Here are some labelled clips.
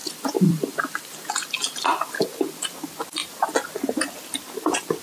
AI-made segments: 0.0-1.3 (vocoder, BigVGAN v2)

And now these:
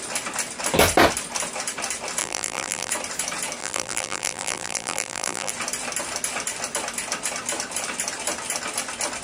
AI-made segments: 2.2-2.9 (vocoder, BigVGAN v2); 3.6-5.5

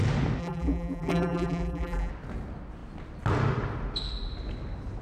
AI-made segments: 0.4-2.1 (vocoder, BigVGAN v2)

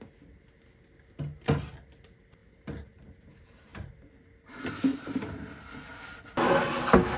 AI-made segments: 2.4-3.3 (vocoder, BigVGAN v2); 3.7-4.2; 4.9-5.7

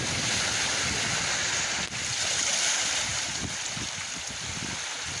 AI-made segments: 3.1-4.0 (vocoder, BigVGAN v2)

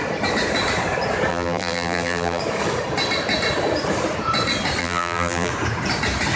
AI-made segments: 1.3-2.4 (vocoder, BigVGAN v2); 4.8-5.5

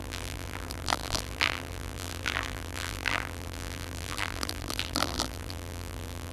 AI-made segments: 0.0-6.3 (vocoder, BigVGAN v2)